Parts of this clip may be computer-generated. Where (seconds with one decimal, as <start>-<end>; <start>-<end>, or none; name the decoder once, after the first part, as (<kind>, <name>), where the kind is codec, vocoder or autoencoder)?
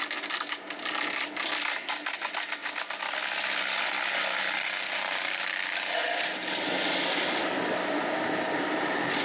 none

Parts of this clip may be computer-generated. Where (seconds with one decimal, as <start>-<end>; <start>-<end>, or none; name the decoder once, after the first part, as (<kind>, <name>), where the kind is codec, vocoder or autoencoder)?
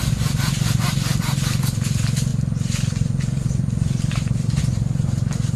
none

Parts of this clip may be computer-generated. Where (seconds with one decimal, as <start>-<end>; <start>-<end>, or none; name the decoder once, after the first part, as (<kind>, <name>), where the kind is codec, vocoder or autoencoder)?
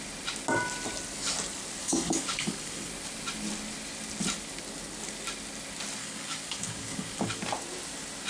1.8-2.9 (codec, DAC); 6.0-7.4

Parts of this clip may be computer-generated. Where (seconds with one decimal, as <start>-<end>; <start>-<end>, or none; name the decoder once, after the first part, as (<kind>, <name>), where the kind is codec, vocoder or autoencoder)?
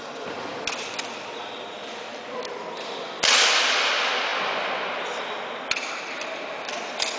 none